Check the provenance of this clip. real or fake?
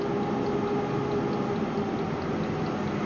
real